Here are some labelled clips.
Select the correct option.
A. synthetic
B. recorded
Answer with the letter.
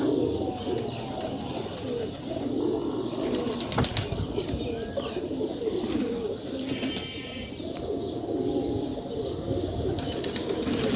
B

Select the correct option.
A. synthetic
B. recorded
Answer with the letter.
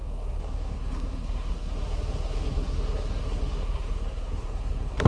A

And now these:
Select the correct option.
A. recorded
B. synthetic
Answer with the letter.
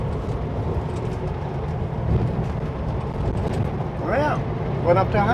A